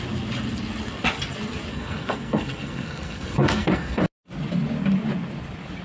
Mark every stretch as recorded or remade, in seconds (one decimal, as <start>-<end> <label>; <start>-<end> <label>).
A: 0.0-1.7 recorded; 1.7-4.0 remade; 4.0-5.8 recorded